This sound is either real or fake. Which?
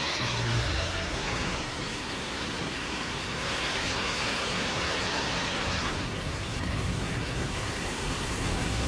fake